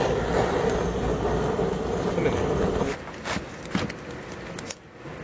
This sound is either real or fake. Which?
real